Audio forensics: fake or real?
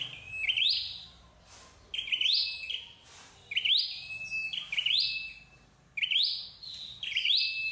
real